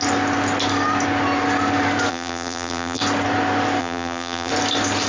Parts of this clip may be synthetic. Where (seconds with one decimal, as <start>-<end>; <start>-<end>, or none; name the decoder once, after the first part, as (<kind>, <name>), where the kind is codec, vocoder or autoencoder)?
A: 2.1-3.0 (vocoder, BigVGAN v2); 3.8-4.5